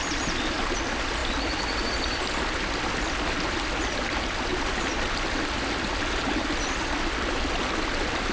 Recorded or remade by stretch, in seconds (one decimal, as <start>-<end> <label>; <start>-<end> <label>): 0.0-8.3 recorded